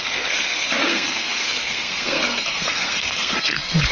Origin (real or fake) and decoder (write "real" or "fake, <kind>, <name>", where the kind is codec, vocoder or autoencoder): fake, codec, SNAC